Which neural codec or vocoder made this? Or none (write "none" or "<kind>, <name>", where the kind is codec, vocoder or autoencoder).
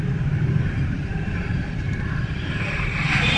vocoder, BigVGAN v2